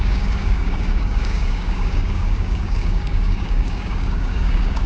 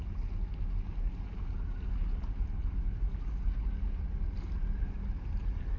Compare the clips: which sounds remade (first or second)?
first